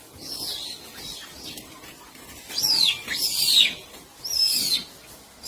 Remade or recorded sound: recorded